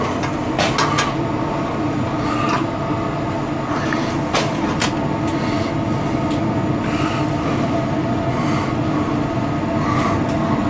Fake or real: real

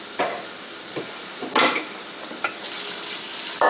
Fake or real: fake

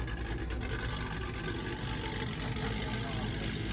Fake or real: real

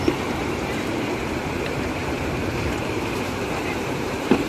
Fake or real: fake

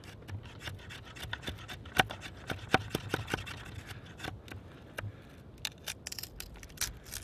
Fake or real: real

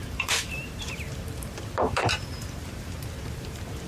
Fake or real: fake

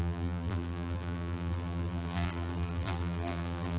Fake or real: fake